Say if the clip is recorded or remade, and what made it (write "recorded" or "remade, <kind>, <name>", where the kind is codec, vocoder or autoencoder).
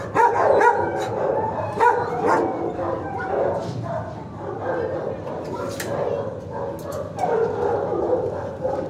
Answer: recorded